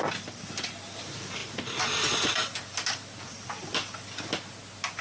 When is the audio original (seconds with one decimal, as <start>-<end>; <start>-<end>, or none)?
0.0-5.0